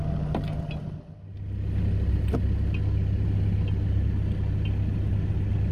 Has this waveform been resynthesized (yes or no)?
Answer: no